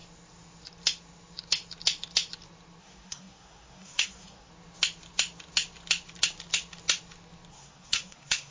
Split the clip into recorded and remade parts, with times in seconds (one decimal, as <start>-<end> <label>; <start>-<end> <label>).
0.0-2.8 recorded; 2.8-4.5 remade; 4.5-7.5 recorded; 7.5-8.5 remade